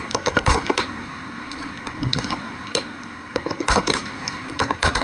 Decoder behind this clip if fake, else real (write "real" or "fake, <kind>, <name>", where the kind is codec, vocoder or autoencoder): fake, codec, SNAC